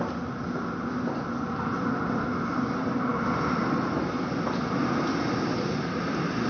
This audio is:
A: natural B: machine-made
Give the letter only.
A